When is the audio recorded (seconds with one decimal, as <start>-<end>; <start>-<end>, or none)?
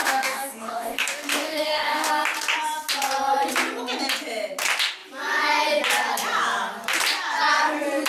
2.1-8.1